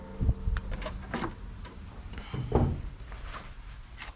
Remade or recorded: recorded